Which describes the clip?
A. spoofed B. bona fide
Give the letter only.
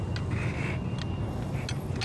B